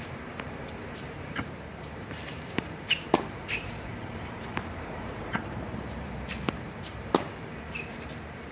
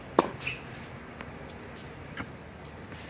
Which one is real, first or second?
second